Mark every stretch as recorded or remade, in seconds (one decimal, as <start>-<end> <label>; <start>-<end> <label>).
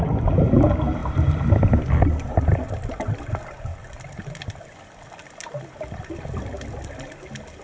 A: 0.0-7.6 recorded